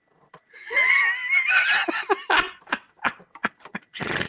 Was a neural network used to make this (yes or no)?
no